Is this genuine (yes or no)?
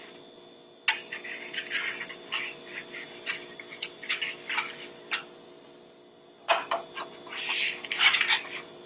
yes